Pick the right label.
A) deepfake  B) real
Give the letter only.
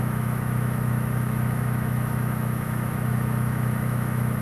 A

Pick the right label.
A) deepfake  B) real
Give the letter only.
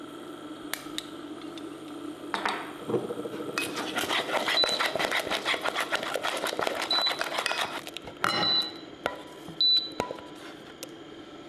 B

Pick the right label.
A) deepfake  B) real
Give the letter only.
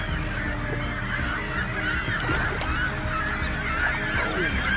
B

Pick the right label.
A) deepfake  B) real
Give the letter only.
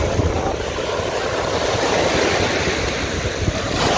B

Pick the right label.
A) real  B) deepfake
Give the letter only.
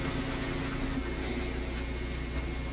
A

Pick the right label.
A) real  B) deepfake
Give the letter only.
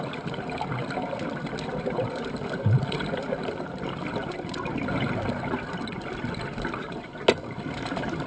A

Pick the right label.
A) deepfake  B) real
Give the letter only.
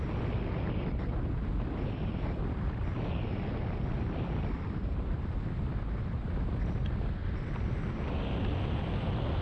B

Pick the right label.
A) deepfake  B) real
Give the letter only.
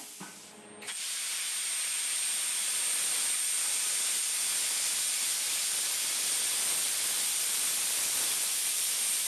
B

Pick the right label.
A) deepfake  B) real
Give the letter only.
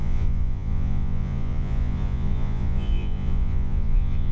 A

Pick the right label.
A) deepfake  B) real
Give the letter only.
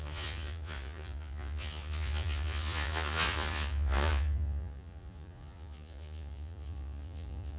A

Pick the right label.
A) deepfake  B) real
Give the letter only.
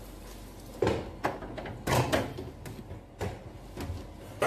B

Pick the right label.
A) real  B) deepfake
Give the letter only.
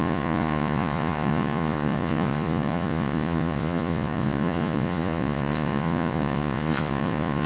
B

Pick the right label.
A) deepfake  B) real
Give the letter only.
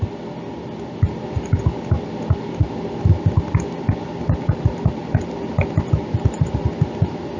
B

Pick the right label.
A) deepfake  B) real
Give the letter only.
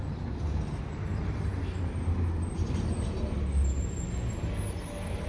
B